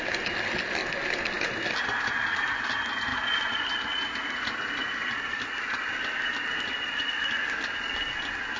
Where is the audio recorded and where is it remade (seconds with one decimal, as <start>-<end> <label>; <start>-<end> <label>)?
0.0-8.6 recorded